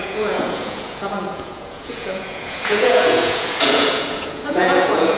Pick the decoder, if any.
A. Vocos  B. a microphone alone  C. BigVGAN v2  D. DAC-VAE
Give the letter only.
A